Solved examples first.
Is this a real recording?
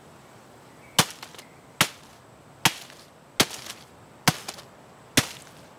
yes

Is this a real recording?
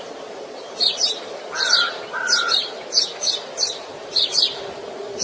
no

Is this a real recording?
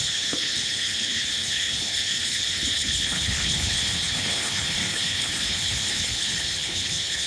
no